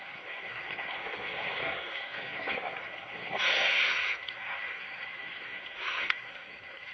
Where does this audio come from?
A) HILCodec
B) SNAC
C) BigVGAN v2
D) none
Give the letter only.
B